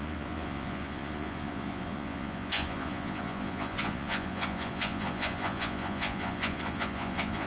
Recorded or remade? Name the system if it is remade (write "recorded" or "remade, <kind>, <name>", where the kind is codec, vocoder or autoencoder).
remade, vocoder, Vocos